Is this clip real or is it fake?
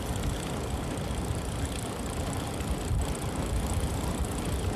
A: real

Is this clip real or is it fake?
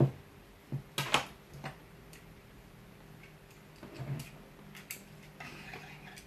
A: real